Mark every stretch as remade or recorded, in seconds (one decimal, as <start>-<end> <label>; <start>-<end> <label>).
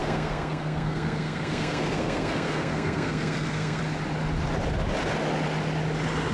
0.0-3.8 remade; 3.8-6.3 recorded